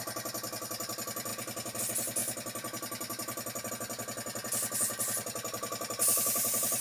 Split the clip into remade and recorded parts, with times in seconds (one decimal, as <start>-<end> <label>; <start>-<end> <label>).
0.0-6.8 recorded